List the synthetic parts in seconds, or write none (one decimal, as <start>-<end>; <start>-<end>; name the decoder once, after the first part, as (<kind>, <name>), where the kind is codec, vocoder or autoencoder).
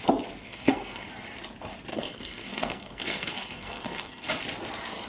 0.4-1.1 (codec, SNAC); 1.9-4.3